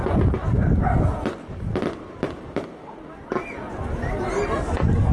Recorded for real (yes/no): yes